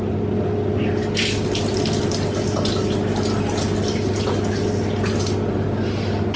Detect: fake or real real